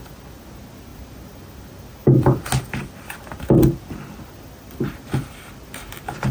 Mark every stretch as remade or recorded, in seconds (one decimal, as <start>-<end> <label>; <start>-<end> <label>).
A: 0.0-6.3 recorded

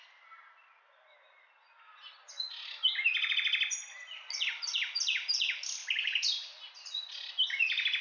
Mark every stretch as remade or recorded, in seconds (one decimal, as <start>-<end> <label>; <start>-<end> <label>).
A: 0.0-8.0 recorded